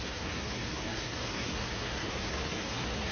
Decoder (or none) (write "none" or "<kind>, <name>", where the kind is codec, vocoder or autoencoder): codec, SNAC